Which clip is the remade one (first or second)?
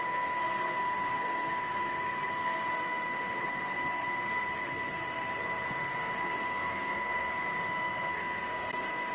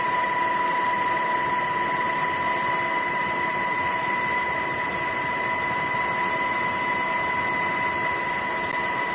first